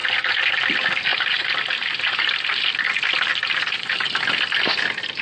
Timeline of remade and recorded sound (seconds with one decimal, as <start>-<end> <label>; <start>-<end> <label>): 0.0-1.1 recorded; 1.1-2.6 remade; 2.6-3.3 recorded; 3.3-4.3 remade; 4.3-5.2 recorded